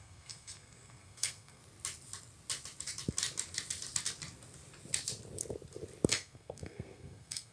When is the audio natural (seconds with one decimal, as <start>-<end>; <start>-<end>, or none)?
1.6-6.1